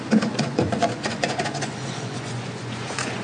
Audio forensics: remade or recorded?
remade